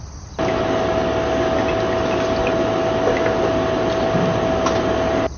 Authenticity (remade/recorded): recorded